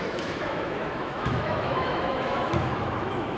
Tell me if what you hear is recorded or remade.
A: remade